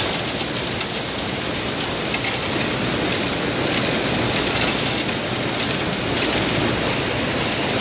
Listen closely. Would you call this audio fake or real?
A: real